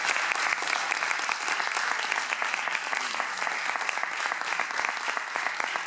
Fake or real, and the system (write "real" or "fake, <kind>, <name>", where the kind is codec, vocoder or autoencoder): real